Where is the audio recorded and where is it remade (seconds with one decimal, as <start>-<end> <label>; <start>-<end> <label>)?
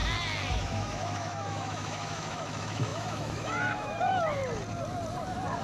0.0-0.5 recorded; 0.5-4.4 remade; 4.4-5.6 recorded